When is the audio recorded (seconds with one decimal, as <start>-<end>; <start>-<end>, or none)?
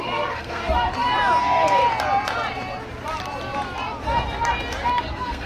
0.6-1.4; 1.8-5.1